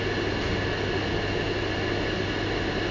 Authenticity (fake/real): real